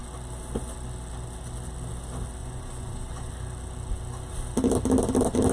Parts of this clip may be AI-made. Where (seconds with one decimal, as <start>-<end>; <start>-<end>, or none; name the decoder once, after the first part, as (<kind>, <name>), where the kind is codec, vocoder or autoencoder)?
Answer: 2.4-3.3 (vocoder, Vocos)